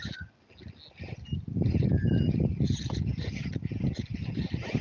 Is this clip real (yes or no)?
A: yes